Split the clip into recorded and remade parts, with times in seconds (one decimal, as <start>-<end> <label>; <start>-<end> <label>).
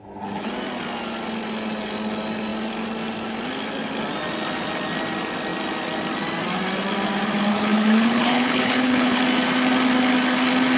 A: 0.0-7.5 recorded; 7.5-9.2 remade; 9.2-10.8 recorded